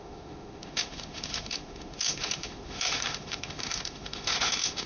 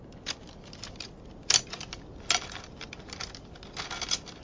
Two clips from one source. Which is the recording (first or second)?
second